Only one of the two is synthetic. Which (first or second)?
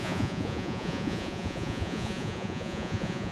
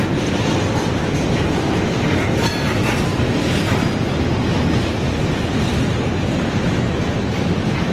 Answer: first